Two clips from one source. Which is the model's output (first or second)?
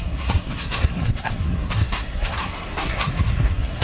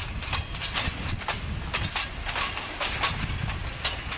first